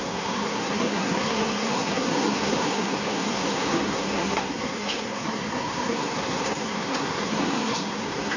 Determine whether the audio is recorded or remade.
remade